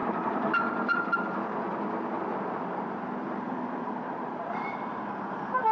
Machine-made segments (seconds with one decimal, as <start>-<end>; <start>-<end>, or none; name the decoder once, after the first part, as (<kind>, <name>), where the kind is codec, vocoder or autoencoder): 0.0-0.6 (vocoder, BigVGAN v2); 2.3-4.3